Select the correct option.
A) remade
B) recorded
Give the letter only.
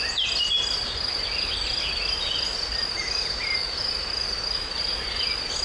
B